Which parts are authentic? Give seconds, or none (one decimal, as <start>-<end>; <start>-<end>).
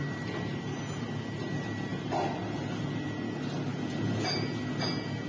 0.0-5.3